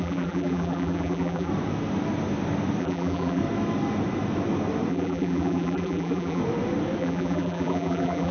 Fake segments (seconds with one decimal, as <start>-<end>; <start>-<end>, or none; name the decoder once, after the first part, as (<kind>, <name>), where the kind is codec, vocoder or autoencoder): 0.0-1.5 (vocoder, BigVGAN v2); 2.8-3.4; 4.9-6.4; 7.0-8.3